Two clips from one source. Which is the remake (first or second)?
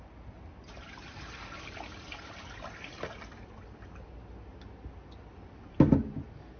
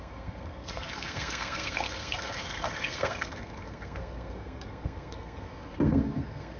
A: second